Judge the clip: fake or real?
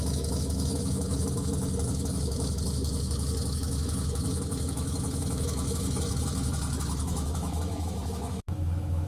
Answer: fake